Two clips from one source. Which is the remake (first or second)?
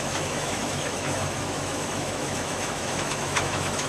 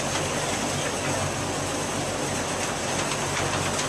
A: first